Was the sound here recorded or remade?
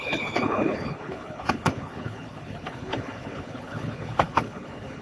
remade